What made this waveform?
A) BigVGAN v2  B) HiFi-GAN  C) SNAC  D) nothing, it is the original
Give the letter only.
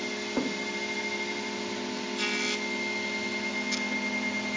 D